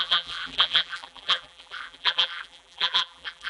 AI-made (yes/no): yes